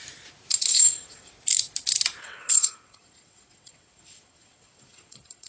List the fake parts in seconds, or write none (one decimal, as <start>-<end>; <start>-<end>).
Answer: 0.7-1.3; 2.2-5.5